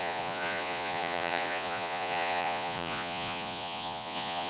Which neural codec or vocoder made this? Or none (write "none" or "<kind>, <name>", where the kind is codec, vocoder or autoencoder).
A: vocoder, Vocos